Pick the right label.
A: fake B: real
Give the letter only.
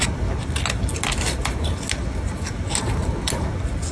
B